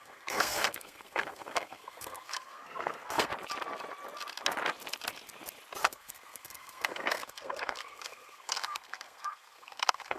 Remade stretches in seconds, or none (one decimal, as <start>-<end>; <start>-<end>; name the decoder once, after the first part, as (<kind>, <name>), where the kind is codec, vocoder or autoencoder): 0.0-3.3 (codec, SNAC); 5.8-10.2